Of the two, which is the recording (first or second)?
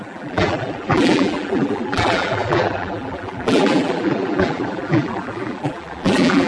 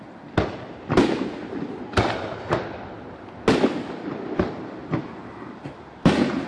second